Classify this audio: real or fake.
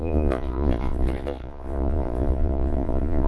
fake